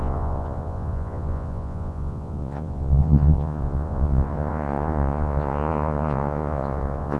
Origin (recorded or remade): remade